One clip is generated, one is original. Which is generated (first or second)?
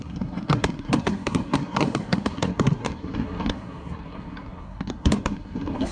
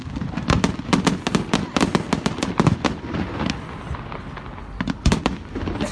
first